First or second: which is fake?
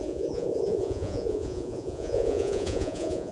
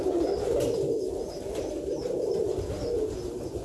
first